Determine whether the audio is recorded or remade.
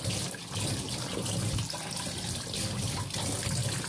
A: recorded